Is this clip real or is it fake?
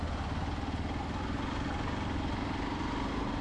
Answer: real